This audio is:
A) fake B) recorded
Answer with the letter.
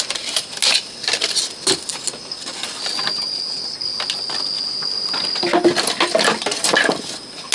B